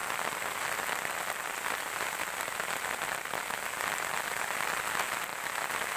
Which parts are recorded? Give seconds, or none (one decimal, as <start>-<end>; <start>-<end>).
0.0-6.0